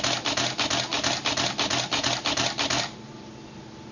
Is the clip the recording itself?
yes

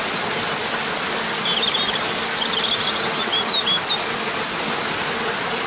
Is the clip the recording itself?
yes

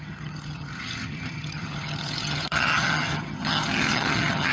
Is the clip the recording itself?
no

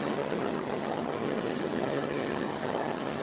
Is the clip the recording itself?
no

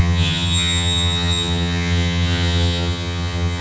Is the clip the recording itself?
no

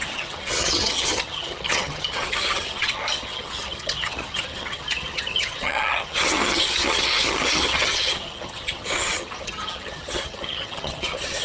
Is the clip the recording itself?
no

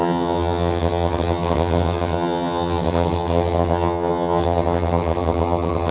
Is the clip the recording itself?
no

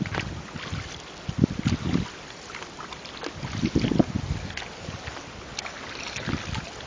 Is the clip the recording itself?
yes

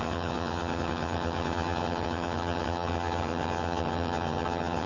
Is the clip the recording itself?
no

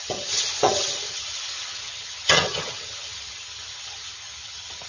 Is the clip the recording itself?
no